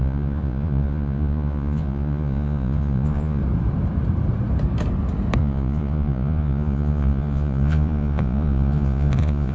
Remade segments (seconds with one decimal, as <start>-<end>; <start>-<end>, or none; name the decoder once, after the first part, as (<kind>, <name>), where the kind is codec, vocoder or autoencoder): 0.0-3.4 (vocoder, Vocos); 5.4-9.5